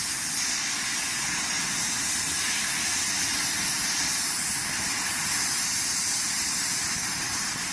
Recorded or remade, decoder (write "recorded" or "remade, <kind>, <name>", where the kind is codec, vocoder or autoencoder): recorded